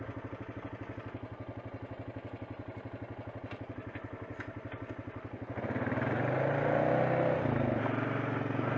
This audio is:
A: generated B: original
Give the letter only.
B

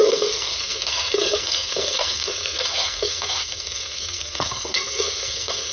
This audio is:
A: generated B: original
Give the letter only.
A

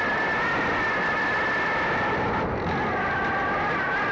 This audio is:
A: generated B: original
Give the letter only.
B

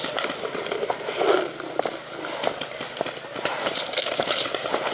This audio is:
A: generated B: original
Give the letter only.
B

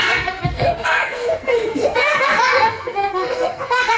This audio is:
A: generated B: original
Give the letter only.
A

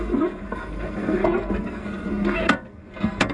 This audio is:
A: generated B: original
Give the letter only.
A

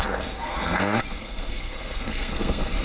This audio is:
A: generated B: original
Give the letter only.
A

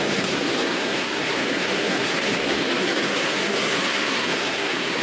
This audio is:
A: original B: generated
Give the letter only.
B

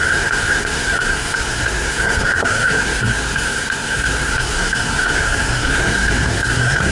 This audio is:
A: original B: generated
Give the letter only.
B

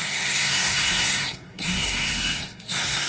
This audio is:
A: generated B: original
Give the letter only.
A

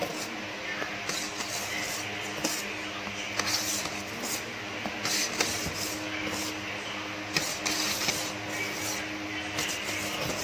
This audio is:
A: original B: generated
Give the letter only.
A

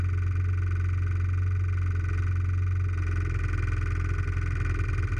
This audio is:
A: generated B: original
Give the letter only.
B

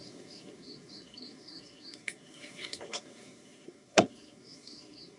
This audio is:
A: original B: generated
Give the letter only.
B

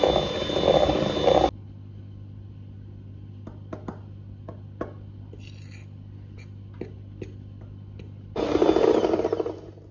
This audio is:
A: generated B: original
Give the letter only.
B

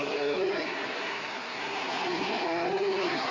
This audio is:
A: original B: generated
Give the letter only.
B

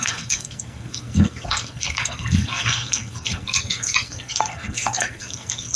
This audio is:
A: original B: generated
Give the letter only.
B